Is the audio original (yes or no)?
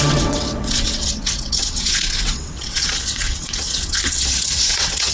no